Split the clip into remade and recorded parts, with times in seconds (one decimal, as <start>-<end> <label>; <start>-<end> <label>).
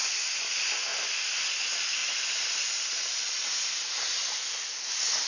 0.0-5.3 recorded